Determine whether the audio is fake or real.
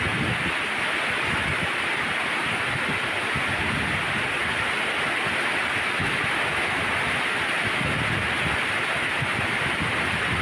real